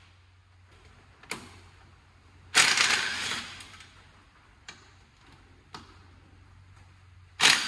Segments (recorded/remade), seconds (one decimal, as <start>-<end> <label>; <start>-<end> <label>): 0.0-7.7 recorded